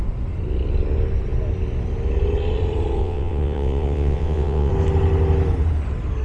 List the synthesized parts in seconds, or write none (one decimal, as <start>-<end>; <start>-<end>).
3.0-4.7